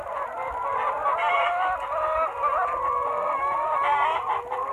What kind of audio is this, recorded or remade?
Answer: recorded